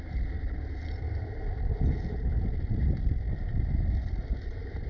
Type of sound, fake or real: real